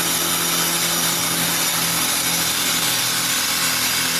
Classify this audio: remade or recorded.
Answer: recorded